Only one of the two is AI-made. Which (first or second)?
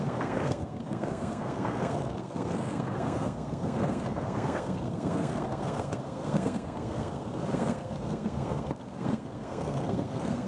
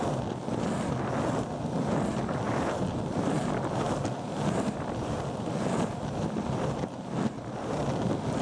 first